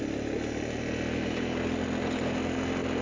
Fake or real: real